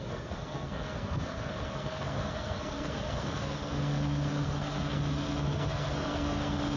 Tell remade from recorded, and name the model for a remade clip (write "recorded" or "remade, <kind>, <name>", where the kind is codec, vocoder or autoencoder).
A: remade, codec, SNAC